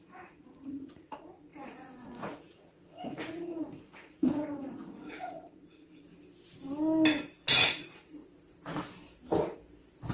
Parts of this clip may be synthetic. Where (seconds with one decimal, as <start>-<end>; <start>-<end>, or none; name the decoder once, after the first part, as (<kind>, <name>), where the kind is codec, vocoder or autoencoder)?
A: 0.0-6.1 (vocoder, Vocos); 7.6-8.2

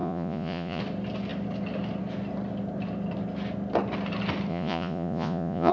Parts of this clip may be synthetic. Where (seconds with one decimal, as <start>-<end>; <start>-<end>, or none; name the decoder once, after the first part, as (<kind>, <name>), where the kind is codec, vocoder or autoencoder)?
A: 0.0-0.8 (vocoder, Vocos); 4.5-5.7

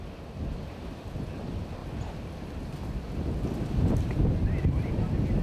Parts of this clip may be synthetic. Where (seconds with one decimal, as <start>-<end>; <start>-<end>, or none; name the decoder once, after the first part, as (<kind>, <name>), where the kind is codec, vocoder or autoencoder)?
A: none

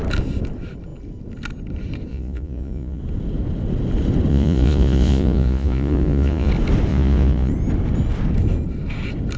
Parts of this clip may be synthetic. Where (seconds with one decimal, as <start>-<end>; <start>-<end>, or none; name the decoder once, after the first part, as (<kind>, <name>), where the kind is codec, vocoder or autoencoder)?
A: 2.1-3.0 (vocoder, Vocos); 4.3-6.5; 6.9-7.5

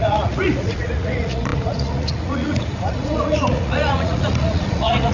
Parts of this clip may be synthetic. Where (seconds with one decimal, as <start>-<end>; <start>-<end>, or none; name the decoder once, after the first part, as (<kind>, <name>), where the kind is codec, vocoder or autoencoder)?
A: 0.0-5.1 (vocoder, Vocos)

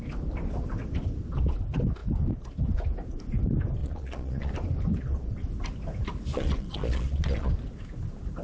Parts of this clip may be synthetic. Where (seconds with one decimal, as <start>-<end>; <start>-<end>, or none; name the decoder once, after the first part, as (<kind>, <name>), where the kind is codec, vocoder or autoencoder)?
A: 3.8-4.5 (vocoder, Vocos); 6.3-7.5

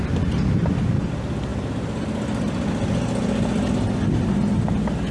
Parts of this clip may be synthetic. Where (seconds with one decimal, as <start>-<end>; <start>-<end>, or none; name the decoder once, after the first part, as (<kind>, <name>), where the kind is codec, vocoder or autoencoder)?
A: none